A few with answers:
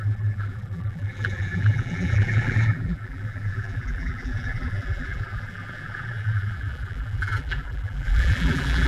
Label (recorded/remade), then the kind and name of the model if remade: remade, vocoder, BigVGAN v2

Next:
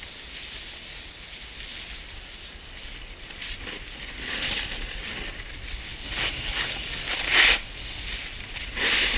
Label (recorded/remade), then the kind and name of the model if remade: recorded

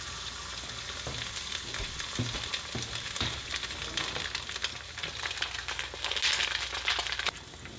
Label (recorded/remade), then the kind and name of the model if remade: recorded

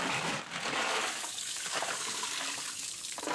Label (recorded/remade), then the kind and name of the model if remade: remade, codec, DAC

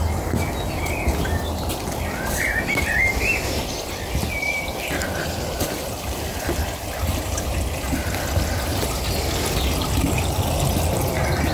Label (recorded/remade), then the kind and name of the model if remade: recorded